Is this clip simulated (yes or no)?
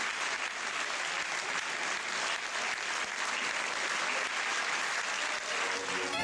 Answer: no